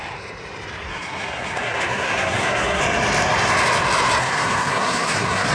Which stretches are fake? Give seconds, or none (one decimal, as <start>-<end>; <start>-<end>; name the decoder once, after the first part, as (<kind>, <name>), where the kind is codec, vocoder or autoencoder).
0.9-2.8 (codec, SNAC); 4.2-5.5